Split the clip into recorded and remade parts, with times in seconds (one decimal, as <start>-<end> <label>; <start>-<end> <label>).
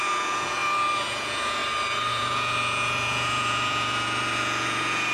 0.0-0.6 remade; 0.6-1.1 recorded; 1.1-1.6 remade; 1.6-2.1 recorded; 2.1-5.1 remade